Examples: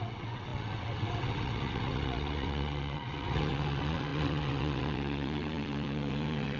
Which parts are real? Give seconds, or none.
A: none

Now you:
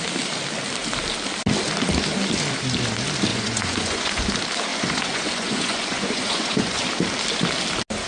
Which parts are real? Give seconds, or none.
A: 0.0-3.3; 4.2-4.7; 6.8-8.1

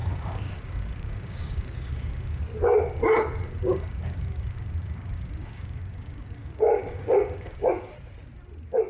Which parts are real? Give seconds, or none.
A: 2.4-3.4; 7.7-8.9

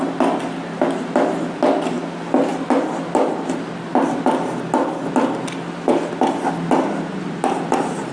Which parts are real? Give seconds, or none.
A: 0.0-8.1